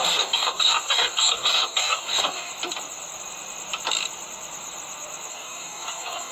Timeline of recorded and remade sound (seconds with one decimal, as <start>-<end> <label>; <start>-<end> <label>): 0.0-2.5 remade; 2.5-5.3 recorded; 5.3-6.3 remade